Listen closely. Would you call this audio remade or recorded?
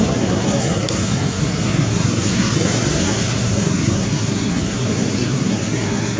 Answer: remade